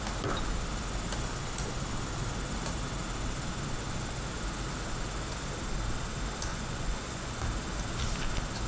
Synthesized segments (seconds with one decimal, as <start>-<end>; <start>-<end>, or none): 6.5-7.4